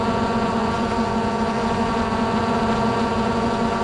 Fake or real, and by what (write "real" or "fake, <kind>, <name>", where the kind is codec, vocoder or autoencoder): fake, vocoder, Vocos